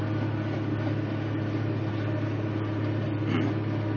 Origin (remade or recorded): recorded